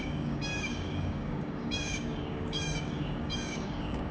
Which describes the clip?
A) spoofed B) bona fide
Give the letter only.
A